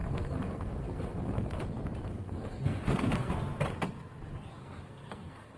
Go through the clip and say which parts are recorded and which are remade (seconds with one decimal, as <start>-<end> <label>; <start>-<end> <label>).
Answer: 0.0-1.6 remade; 1.6-2.1 recorded; 2.1-3.3 remade; 3.3-4.6 recorded; 4.6-5.6 remade